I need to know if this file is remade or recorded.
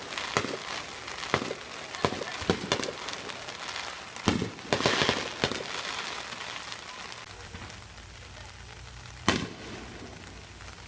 recorded